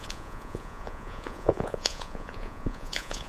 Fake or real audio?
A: fake